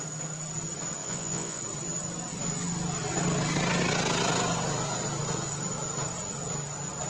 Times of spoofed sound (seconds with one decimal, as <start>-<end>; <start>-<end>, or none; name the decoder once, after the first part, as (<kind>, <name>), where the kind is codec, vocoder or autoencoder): 1.0-1.6 (vocoder, Vocos)